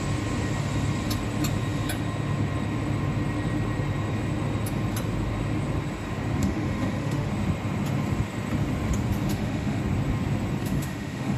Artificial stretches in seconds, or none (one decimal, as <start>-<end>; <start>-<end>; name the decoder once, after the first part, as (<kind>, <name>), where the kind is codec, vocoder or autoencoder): 6.4-7.3 (autoencoder, DAC-VAE); 9.3-9.8; 10.6-11.4